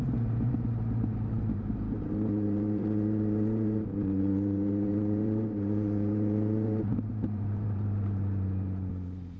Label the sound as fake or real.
fake